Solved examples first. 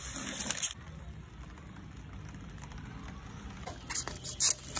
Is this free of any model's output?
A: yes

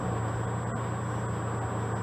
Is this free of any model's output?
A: yes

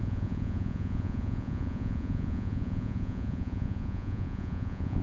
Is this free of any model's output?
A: no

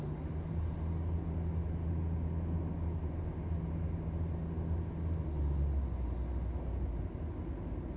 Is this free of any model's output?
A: yes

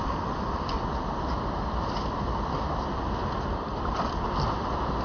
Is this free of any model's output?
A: yes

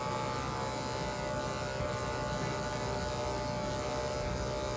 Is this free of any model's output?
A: yes